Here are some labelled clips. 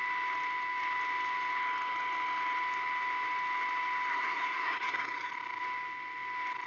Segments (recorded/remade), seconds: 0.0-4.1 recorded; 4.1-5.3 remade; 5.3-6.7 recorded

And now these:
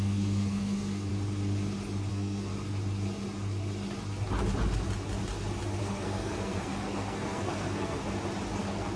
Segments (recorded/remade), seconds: 0.0-1.1 remade; 1.1-2.1 recorded; 2.1-2.5 remade; 2.5-5.8 recorded; 5.8-8.0 remade; 8.0-8.6 recorded; 8.6-9.0 remade

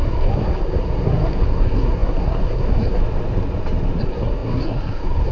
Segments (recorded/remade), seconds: 0.0-3.0 remade; 3.0-4.0 recorded; 4.0-5.3 remade

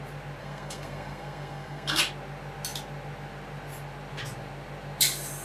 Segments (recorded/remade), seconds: 0.0-0.4 recorded; 0.4-2.0 remade; 2.0-5.4 recorded

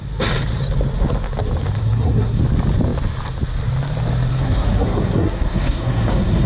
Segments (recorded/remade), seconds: 0.0-1.8 recorded; 1.8-2.4 remade; 2.4-4.3 recorded; 4.3-6.5 remade

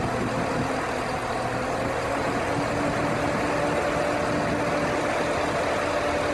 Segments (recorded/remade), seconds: 0.0-6.3 recorded

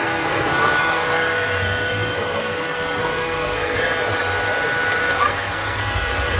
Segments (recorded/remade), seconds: 0.0-3.8 remade; 3.8-5.0 recorded; 5.0-6.4 remade

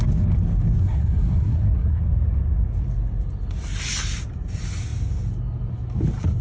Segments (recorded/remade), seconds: 0.0-0.8 recorded; 0.8-2.0 remade; 2.0-6.4 recorded